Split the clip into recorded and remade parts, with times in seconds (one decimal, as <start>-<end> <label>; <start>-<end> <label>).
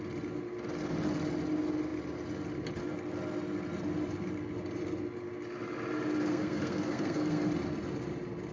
0.0-6.2 recorded; 6.2-7.5 remade; 7.5-8.5 recorded